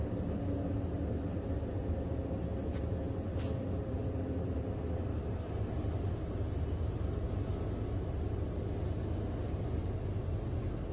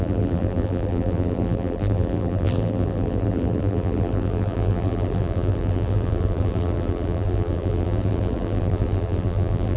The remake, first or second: second